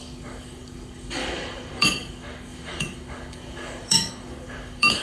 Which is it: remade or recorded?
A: remade